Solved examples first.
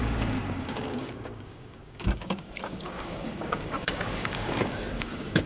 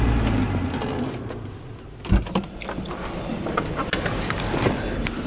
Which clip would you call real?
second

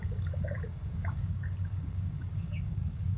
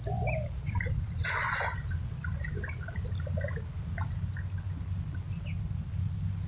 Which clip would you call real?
second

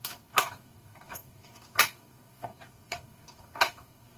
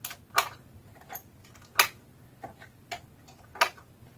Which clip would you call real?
second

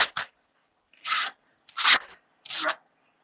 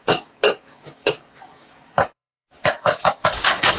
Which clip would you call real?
first